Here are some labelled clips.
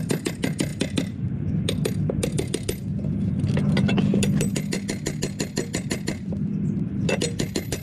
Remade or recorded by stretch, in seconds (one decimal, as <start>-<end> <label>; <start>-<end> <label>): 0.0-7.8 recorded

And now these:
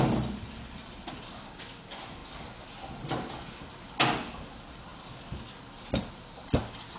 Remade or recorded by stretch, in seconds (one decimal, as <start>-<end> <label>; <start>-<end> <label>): 0.0-7.0 recorded

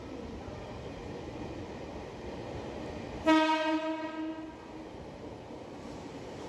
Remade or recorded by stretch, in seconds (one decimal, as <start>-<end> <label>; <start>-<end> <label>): 0.0-1.0 remade; 1.0-4.9 recorded; 4.9-6.5 remade